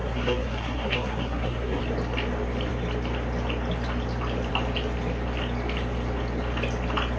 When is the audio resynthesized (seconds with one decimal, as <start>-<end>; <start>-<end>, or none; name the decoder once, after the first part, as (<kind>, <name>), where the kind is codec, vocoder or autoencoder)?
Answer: 0.0-1.8 (codec, SNAC)